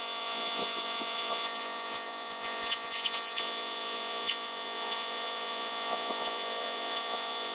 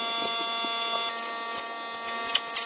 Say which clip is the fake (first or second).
first